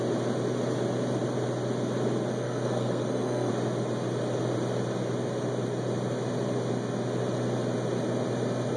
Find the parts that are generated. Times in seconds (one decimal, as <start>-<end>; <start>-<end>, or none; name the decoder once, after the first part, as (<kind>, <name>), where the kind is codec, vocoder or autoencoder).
2.3-3.5 (codec, SNAC)